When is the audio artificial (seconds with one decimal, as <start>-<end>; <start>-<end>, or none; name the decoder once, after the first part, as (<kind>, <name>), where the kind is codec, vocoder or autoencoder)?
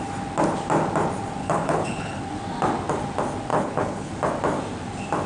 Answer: 1.4-2.2 (codec, HILCodec); 3.5-4.1